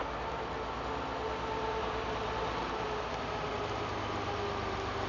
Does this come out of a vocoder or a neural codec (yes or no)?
no